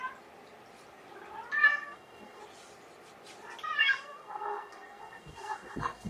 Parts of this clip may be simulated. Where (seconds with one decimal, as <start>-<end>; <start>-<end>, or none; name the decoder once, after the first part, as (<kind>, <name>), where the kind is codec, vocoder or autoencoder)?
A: 1.6-2.4 (codec, SNAC); 3.8-6.1